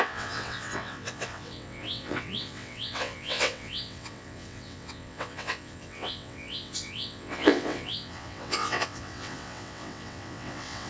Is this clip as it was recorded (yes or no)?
no